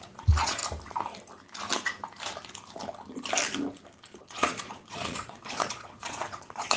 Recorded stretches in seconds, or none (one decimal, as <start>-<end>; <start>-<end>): 0.6-4.2